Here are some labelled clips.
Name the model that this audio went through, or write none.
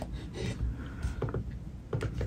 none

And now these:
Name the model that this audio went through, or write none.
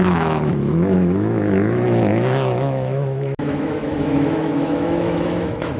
autoencoder, DAC-VAE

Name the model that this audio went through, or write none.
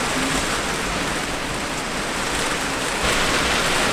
none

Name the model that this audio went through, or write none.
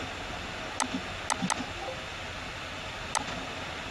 none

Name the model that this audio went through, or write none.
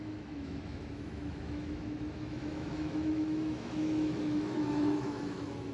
autoencoder, DAC-VAE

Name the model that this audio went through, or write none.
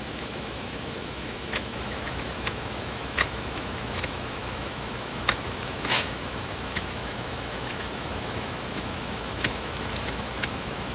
autoencoder, DAC-VAE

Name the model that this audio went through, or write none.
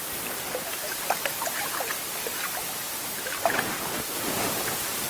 none